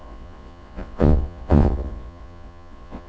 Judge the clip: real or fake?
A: fake